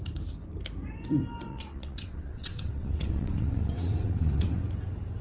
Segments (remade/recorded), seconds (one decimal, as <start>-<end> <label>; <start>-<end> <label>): 0.0-1.5 recorded; 1.5-4.6 remade; 4.6-5.2 recorded